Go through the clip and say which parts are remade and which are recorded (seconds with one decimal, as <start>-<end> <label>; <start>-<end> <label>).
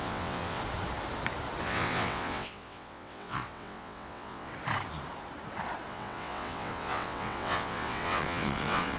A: 0.0-0.6 remade; 0.6-1.6 recorded; 1.6-4.5 remade; 4.5-5.9 recorded; 5.9-9.0 remade